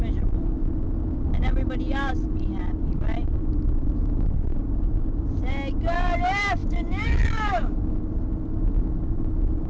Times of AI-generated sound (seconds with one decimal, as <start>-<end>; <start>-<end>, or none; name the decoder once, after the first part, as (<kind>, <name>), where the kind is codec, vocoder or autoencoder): 6.6-7.8 (autoencoder, DAC-VAE)

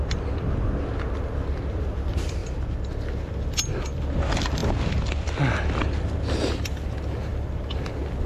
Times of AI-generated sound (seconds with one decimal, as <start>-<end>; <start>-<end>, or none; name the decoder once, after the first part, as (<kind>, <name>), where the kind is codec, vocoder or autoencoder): none

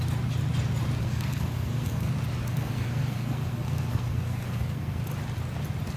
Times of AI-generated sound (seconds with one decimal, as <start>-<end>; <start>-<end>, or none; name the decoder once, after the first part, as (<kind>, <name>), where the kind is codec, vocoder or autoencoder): 1.0-2.1 (codec, SNAC); 2.5-5.0

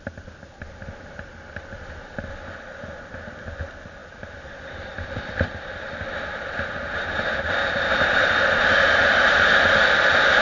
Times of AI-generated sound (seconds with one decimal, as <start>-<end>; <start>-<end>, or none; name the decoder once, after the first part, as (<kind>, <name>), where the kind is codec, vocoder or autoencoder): 4.0-6.7 (vocoder, BigVGAN v2)

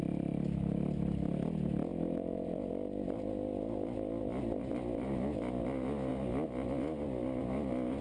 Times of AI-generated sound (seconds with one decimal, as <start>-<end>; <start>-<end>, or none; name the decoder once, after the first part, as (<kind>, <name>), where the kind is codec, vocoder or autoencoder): 1.9-2.7 (vocoder, BigVGAN v2)